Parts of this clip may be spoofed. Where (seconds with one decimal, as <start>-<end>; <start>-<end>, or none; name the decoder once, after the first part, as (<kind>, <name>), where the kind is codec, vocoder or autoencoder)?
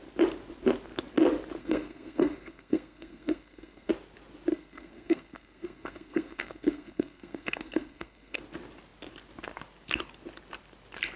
1.6-3.9 (codec, SNAC); 4.5-8.4